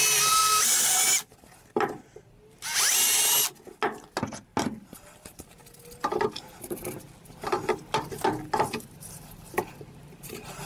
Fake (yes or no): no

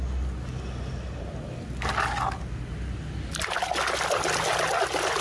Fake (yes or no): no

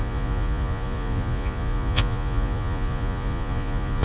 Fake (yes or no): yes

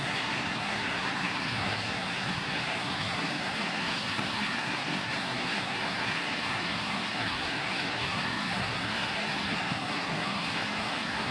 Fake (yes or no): yes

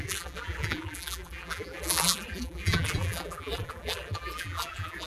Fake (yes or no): yes